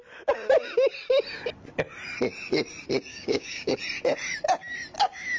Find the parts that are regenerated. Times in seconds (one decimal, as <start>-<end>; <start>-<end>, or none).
3.1-3.8